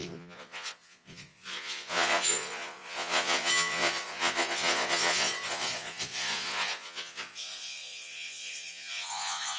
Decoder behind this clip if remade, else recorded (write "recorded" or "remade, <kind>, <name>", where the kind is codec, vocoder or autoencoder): remade, vocoder, Vocos